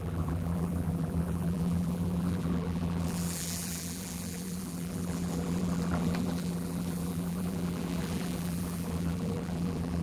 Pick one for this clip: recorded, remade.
remade